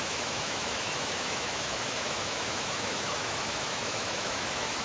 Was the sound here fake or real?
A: fake